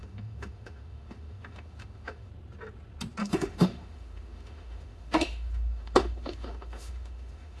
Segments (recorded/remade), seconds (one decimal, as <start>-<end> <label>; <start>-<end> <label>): 0.0-2.3 remade; 2.3-3.2 recorded; 3.2-7.6 remade